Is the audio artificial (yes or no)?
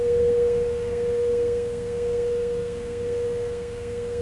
yes